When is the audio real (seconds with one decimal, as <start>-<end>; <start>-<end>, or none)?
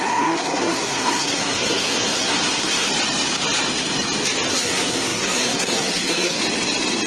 2.9-4.5; 6.4-7.1